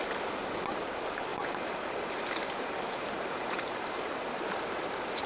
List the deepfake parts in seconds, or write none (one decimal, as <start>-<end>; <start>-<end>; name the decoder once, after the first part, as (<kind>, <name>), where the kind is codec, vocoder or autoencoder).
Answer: 1.3-4.5 (vocoder, BigVGAN v2)